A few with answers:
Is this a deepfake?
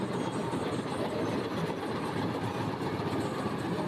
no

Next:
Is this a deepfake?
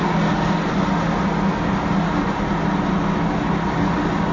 no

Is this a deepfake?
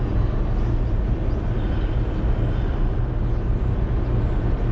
no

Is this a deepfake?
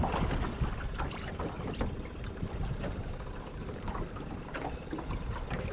yes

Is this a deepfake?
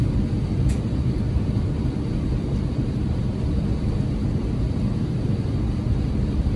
yes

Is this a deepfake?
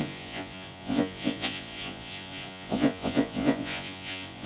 yes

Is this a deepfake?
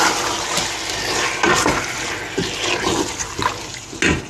no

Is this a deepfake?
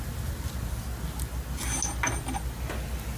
no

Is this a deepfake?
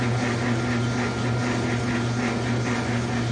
no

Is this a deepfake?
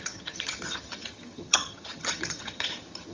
yes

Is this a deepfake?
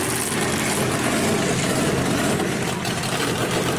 no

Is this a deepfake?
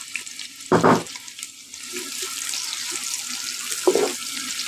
no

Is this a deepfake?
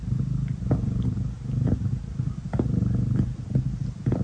no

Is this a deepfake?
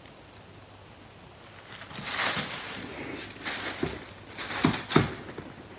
no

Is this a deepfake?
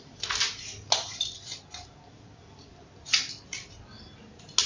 no